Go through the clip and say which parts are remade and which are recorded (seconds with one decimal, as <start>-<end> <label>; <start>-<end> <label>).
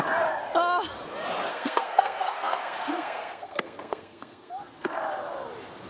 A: 0.0-1.5 recorded; 1.5-5.0 remade; 5.0-5.9 recorded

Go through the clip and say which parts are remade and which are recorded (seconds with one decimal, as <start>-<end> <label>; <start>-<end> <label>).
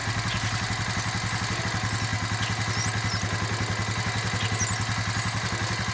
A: 0.0-5.9 recorded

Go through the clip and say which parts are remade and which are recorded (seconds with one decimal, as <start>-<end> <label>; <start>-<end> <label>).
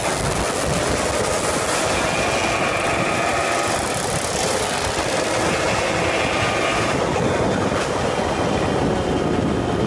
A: 0.0-9.9 recorded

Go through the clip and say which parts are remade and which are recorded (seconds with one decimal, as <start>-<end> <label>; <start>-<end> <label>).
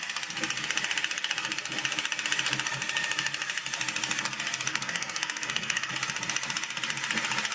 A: 0.0-4.7 recorded; 4.7-5.9 remade; 5.9-7.5 recorded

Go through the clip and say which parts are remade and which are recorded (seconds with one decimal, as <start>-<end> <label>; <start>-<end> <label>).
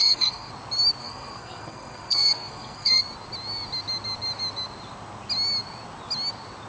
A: 0.0-0.5 remade; 0.5-1.0 recorded; 1.0-3.0 remade; 3.0-6.7 recorded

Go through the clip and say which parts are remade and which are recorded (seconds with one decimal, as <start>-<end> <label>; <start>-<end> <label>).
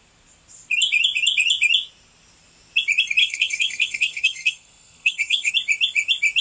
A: 0.0-3.2 recorded; 3.2-5.5 remade; 5.5-6.4 recorded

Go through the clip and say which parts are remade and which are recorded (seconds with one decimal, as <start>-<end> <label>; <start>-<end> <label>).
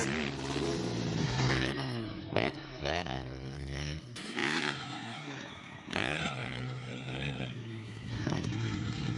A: 0.0-1.2 recorded; 1.2-9.2 remade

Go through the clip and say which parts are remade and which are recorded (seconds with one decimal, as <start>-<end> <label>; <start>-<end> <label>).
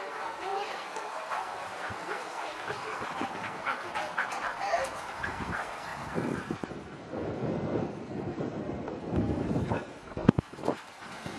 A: 0.0-11.4 remade